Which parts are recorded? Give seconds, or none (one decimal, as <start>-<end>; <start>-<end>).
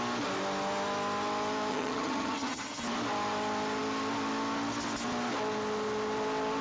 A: 0.0-1.7; 2.8-6.6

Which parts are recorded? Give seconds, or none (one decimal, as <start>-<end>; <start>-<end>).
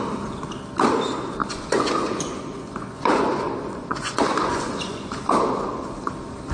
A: 0.0-1.4; 5.2-6.5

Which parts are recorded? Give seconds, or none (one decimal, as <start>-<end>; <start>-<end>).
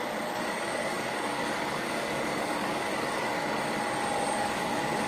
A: 3.3-4.3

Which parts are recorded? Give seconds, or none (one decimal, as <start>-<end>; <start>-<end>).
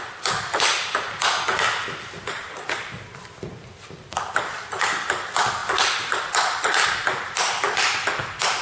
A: 0.7-2.3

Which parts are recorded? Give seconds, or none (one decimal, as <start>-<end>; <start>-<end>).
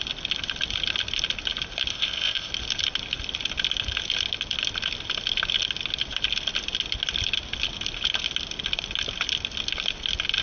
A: 0.0-1.9; 2.5-10.4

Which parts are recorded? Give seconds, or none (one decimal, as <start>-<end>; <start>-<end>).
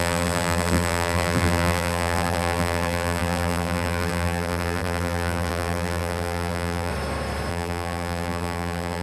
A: 6.9-7.5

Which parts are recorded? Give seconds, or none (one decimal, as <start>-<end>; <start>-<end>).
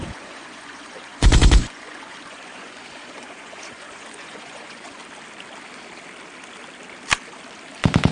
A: 5.0-8.1